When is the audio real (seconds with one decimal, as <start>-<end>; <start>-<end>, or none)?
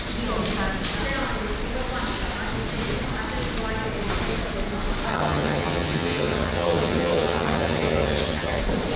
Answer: 0.0-5.1; 8.6-9.0